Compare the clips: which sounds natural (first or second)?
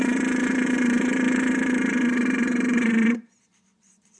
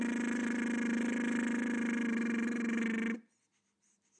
second